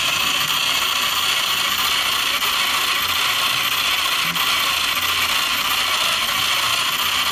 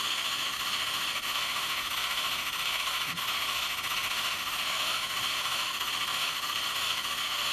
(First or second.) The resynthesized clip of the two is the second